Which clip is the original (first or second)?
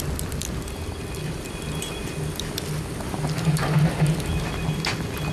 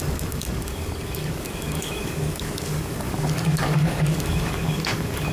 first